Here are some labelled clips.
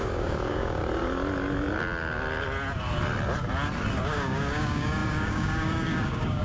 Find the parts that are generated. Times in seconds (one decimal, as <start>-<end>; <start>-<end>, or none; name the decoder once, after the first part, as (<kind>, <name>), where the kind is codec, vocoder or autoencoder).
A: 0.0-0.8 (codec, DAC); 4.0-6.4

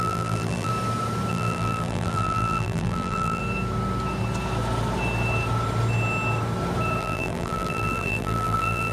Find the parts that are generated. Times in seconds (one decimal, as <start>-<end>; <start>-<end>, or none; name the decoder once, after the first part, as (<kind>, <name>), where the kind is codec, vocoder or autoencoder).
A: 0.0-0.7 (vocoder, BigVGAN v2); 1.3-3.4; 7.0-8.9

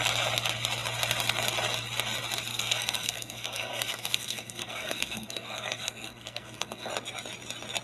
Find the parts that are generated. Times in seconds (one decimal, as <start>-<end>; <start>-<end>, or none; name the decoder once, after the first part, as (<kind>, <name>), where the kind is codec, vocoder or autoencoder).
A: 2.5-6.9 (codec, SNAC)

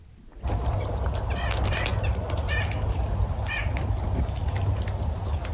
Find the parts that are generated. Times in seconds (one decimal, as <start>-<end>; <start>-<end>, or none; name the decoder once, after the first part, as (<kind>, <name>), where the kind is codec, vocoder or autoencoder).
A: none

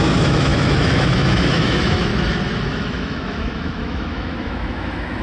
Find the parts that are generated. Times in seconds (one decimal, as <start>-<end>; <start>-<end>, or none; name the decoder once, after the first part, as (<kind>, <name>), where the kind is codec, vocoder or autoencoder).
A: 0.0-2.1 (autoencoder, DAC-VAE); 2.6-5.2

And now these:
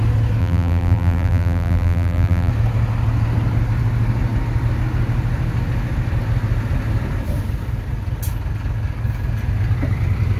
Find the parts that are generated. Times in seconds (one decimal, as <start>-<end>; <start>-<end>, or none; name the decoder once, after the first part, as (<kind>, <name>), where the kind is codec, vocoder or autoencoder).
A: 0.4-2.5 (vocoder, BigVGAN v2)

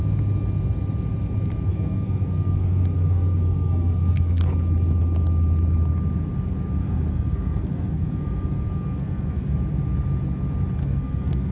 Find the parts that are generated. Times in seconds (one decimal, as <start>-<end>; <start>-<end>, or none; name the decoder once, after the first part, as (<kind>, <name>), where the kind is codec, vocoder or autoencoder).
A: 1.7-4.4 (codec, SNAC); 6.8-9.6; 10.8-11.5